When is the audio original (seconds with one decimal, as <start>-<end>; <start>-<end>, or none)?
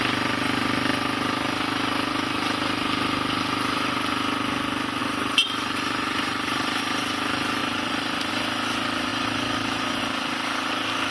0.0-5.0; 6.8-7.6; 8.3-9.1; 10.0-11.1